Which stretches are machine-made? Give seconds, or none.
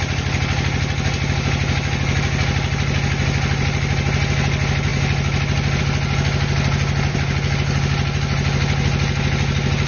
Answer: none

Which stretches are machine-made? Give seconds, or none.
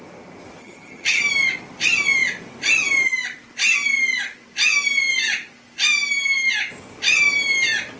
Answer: 0.6-1.2 (vocoder, HiFi-GAN)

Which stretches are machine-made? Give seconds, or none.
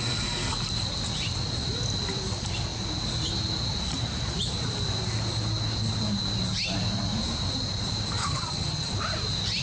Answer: 8.2-8.9 (vocoder, HiFi-GAN)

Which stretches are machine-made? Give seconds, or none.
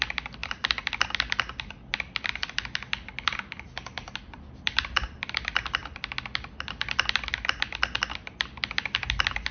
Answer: none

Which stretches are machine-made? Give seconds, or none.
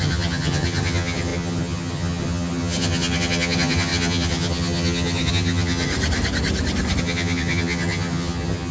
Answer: 0.0-5.9 (vocoder, HiFi-GAN); 7.0-8.7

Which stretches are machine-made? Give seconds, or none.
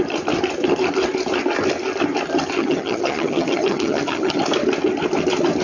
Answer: 2.6-4.4 (vocoder, HiFi-GAN)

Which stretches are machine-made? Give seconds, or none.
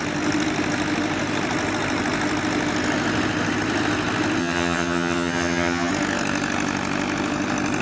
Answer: 4.4-5.9 (vocoder, HiFi-GAN)